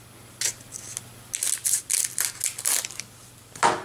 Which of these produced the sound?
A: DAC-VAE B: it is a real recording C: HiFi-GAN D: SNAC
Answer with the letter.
B